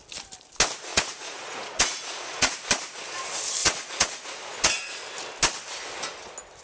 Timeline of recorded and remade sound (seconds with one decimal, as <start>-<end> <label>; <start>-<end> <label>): 0.0-0.9 recorded; 0.9-2.5 remade; 2.5-3.6 recorded; 3.6-5.0 remade; 5.0-6.6 recorded